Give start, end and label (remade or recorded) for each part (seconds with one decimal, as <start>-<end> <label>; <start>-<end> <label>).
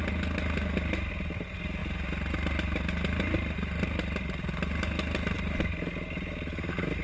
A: 0.0-7.0 recorded